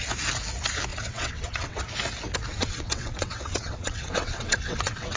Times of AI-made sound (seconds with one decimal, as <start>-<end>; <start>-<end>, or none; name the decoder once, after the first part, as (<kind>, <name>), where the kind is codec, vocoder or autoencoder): 0.9-1.8 (vocoder, WaveNeXt); 2.5-5.2